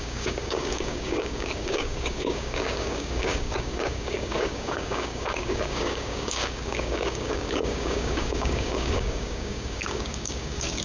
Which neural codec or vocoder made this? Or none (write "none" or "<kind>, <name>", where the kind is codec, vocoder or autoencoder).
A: codec, DAC